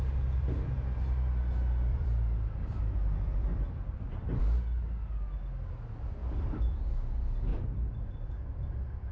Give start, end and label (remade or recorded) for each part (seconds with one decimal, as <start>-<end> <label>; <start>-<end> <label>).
0.0-1.9 recorded; 1.9-4.4 remade; 4.4-6.2 recorded; 6.2-6.8 remade; 6.8-7.5 recorded; 7.5-8.3 remade; 8.3-9.1 recorded